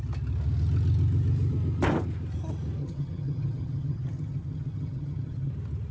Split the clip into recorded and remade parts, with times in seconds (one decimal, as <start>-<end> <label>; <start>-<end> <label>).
0.0-2.8 recorded; 2.8-5.5 remade; 5.5-5.9 recorded